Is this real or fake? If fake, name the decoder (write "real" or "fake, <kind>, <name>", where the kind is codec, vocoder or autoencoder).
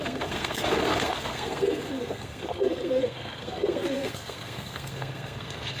fake, codec, SNAC